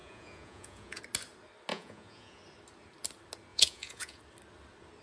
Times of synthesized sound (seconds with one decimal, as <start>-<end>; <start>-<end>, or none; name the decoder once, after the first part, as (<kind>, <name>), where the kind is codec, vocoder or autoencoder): 0.0-1.0 (vocoder, Vocos); 1.7-2.4; 3.5-4.2